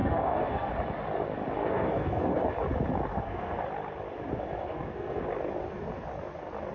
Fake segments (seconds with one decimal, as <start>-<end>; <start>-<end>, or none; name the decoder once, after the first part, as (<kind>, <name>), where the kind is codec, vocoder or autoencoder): 0.0-0.7 (codec, SNAC); 1.6-2.5; 3.1-3.6; 4.7-5.2

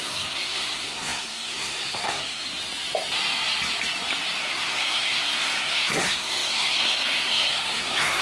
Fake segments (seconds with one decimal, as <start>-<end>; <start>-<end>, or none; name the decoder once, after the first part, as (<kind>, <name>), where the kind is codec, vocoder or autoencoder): 0.0-2.6 (codec, SNAC); 4.4-8.2

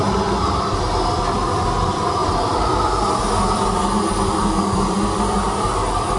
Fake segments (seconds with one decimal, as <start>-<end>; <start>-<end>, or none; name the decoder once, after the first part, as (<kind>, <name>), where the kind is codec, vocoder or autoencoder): none

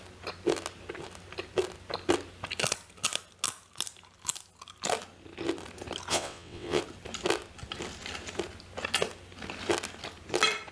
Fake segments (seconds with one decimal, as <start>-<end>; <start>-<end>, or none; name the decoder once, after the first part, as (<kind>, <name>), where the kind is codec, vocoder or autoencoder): 6.1-6.8 (vocoder, WaveNeXt)

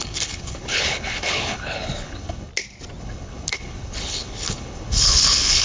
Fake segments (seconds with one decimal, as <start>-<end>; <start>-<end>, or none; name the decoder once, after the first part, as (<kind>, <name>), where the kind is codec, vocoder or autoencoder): 0.0-2.5 (codec, HILCodec); 3.0-5.6